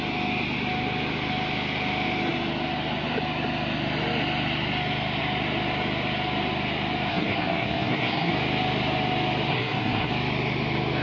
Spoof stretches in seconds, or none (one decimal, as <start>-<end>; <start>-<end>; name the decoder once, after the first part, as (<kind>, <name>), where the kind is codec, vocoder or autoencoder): 7.1-8.3 (codec, SNAC); 9.5-10.1

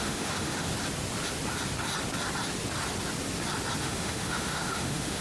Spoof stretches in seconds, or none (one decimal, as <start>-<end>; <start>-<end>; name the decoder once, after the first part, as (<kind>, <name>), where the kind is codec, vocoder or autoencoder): 0.0-0.7 (autoencoder, DAC-VAE); 3.8-5.2

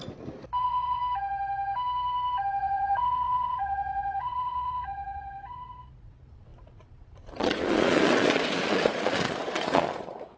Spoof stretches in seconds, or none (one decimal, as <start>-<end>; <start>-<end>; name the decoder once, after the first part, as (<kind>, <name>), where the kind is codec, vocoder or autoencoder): 0.6-1.0 (vocoder, Vocos); 2.6-10.4

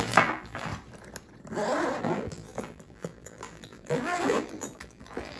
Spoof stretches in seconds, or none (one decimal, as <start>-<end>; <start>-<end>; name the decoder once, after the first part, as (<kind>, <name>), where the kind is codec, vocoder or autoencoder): 0.0-0.7 (vocoder, BigVGAN v2); 2.0-5.4

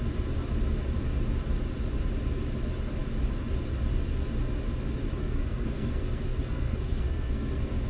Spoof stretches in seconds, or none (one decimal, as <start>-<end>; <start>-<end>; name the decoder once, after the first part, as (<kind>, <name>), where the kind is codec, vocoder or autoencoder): 5.2-7.9 (codec, SNAC)